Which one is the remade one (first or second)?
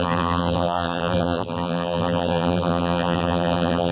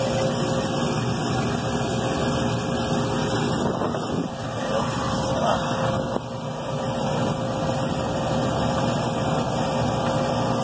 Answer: first